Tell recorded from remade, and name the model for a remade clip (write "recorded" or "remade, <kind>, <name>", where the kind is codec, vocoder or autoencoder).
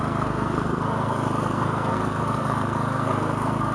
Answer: remade, codec, SNAC